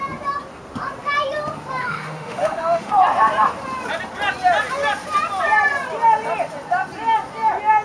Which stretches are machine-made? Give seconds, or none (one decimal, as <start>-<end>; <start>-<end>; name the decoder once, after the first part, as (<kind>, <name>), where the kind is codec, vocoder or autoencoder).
1.8-2.9 (autoencoder, DAC-VAE)